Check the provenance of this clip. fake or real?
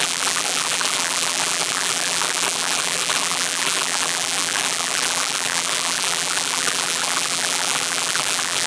fake